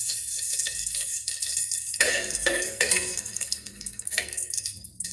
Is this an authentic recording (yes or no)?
no